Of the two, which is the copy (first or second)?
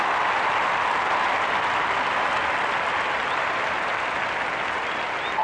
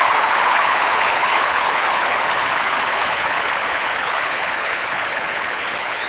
second